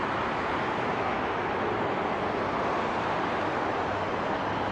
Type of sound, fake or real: real